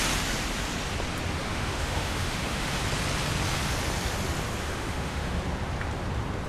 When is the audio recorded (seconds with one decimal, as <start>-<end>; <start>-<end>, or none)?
0.0-1.4; 2.8-4.6; 5.4-6.5